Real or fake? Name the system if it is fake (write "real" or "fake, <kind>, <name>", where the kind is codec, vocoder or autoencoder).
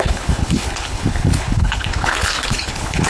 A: fake, codec, HILCodec